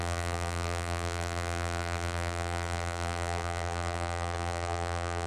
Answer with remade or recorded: remade